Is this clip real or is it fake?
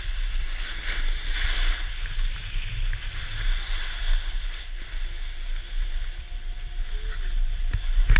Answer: real